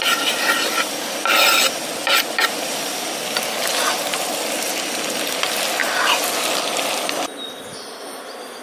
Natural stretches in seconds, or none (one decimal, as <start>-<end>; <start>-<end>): 0.0-7.7